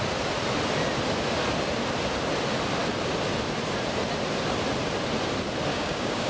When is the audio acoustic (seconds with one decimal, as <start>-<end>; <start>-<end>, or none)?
0.0-5.7